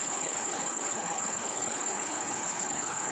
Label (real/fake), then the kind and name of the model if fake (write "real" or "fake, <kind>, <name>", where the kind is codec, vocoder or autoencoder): fake, codec, HILCodec